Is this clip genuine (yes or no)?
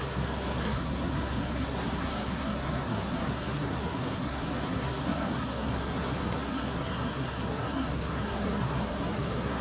no